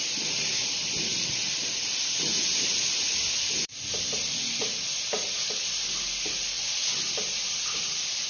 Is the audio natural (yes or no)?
yes